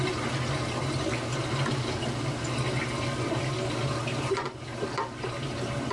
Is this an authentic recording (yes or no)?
yes